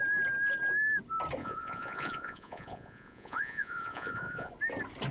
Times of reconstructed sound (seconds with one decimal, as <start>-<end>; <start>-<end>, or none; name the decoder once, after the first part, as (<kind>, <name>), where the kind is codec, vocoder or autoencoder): 1.4-4.5 (vocoder, Vocos)